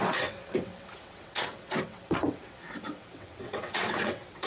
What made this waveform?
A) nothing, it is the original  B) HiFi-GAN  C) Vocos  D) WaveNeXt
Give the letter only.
D